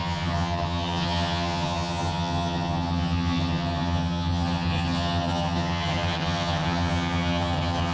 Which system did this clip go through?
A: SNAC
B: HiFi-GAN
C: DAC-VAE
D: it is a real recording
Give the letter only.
B